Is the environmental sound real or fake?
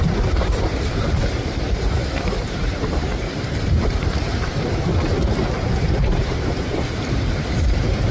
fake